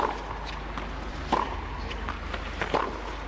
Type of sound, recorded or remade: recorded